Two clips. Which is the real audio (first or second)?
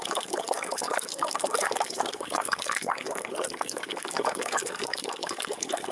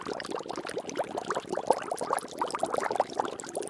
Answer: second